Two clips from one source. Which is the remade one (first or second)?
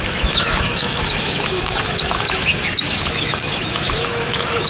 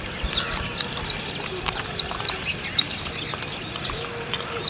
first